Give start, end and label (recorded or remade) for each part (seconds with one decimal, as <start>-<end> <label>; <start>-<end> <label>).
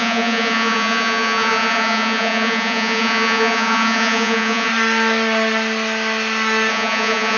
0.0-4.7 remade; 4.7-6.7 recorded; 6.7-7.4 remade